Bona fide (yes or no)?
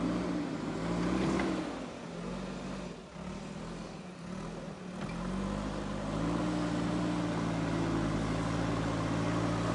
yes